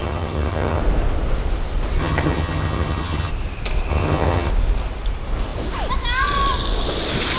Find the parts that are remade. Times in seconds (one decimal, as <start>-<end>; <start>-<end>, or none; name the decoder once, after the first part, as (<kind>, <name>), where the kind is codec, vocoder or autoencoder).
0.0-0.8 (vocoder, HiFi-GAN); 2.0-3.3; 3.9-4.5